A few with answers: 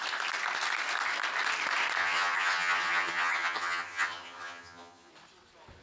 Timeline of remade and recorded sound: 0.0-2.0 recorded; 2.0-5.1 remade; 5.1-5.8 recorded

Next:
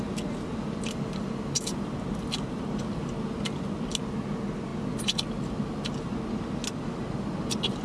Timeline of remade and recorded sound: 0.0-7.8 recorded